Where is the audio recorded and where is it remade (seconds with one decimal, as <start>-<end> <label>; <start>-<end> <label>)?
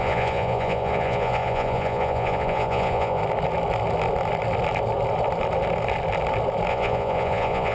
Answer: 0.0-3.2 remade; 3.2-6.7 recorded; 6.7-7.7 remade